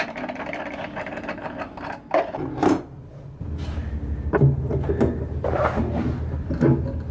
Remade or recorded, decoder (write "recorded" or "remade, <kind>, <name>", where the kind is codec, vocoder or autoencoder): recorded